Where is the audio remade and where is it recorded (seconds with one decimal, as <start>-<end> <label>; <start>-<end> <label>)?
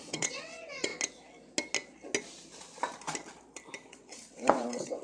0.0-0.9 remade; 0.9-3.9 recorded; 3.9-5.0 remade